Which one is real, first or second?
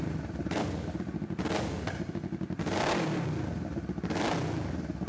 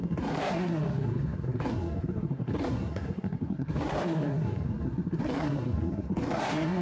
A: first